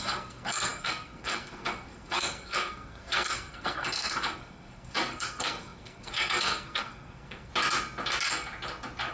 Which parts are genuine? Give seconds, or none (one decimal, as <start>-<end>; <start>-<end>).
7.5-9.1